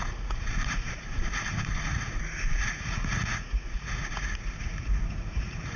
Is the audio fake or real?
fake